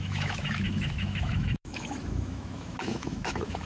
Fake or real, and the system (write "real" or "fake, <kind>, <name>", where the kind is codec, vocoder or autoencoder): fake, autoencoder, DAC-VAE